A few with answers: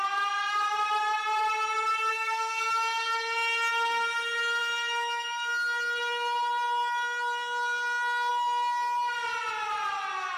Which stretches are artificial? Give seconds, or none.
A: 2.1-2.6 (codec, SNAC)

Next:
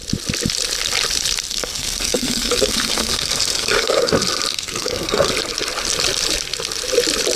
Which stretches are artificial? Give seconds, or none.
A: 1.5-4.1 (codec, SNAC); 4.5-5.3

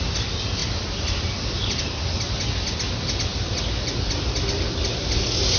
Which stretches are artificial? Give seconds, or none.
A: none